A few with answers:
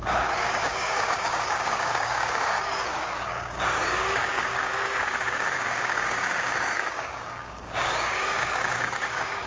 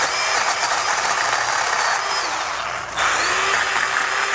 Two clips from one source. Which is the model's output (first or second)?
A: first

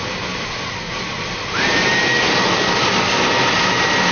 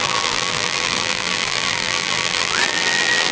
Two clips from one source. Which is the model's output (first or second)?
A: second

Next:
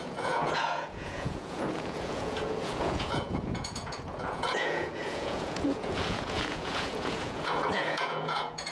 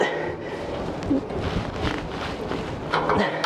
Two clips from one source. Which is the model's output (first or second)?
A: first